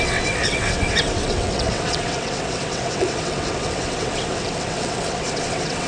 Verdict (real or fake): fake